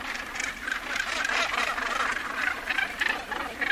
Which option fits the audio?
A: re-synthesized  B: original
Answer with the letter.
B